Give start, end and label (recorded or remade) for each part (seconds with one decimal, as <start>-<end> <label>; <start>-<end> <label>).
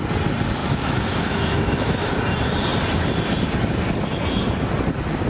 0.0-0.6 recorded; 0.6-2.1 remade; 2.1-5.3 recorded